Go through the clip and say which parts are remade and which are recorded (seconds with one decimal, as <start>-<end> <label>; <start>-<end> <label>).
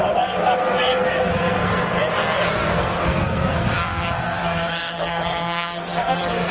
0.0-1.9 remade; 1.9-2.5 recorded; 2.5-6.5 remade